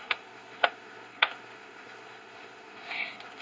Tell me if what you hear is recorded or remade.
remade